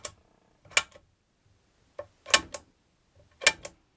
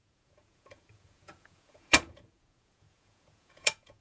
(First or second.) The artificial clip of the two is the second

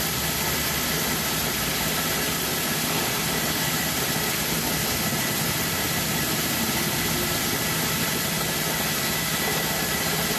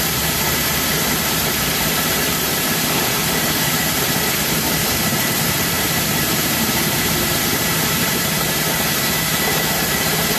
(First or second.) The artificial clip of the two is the second